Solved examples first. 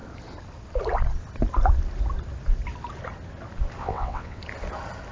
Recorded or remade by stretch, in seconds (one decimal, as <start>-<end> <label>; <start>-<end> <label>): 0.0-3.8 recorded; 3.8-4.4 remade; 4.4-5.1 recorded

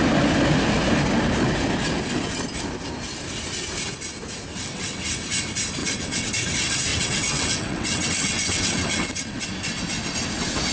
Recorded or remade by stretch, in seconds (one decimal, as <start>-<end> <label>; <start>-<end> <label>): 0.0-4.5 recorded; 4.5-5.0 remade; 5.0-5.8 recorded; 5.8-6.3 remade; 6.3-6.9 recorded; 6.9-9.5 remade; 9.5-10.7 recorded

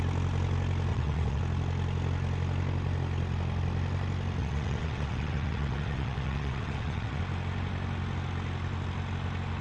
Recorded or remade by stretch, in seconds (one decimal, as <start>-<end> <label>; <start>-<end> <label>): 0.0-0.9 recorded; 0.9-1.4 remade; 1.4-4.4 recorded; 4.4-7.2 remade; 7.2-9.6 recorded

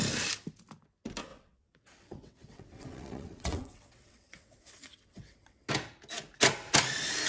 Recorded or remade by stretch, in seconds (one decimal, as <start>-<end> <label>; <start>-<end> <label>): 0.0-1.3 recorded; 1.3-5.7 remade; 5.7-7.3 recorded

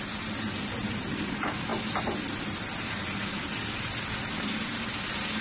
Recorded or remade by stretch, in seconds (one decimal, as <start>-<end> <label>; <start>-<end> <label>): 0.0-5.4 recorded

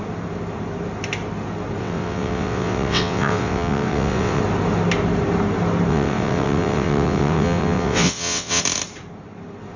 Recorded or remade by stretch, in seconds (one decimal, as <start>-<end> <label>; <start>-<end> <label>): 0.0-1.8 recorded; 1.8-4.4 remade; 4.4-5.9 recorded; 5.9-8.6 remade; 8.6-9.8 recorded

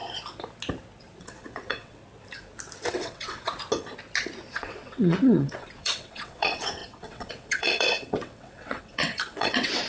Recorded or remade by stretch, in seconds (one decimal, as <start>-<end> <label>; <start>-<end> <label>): 0.0-1.2 recorded; 1.2-2.0 remade; 2.0-2.9 recorded; 2.9-3.5 remade; 3.5-4.5 recorded; 4.5-9.9 remade

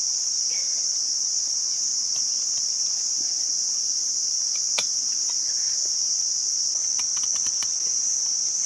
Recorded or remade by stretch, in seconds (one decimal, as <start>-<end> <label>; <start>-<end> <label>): 0.0-8.7 recorded